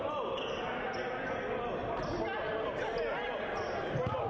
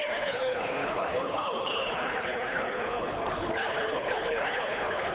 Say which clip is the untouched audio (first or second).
first